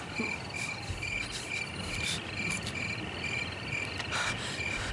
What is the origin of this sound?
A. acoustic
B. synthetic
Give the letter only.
A